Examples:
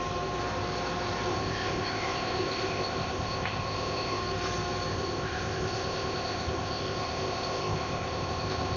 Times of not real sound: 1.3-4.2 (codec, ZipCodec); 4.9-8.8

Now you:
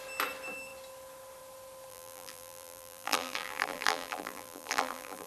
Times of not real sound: 1.9-5.3 (vocoder, BigVGAN v2)

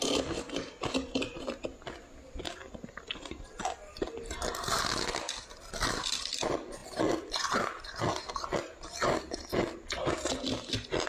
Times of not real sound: none

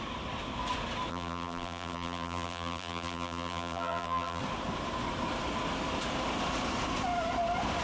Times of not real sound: 1.1-4.4 (vocoder, BigVGAN v2)